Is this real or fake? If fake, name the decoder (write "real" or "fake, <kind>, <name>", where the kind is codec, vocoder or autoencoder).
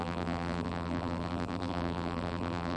fake, vocoder, BigVGAN v2